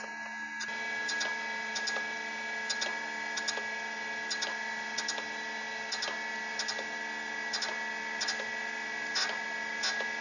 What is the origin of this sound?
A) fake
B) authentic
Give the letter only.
B